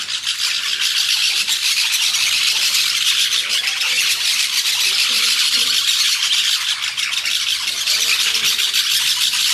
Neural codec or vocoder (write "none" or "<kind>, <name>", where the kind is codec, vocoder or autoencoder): vocoder, BigVGAN v2